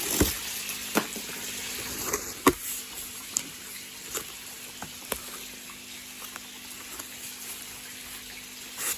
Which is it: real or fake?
real